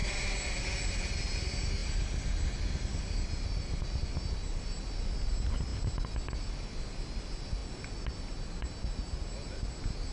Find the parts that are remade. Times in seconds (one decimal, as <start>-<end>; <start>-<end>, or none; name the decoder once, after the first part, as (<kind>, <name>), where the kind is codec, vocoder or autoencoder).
none